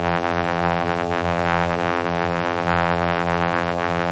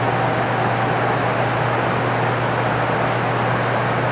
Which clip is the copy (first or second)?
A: first